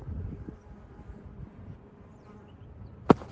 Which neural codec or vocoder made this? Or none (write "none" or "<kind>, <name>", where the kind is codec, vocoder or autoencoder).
none